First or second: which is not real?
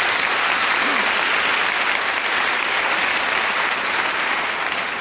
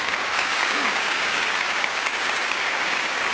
second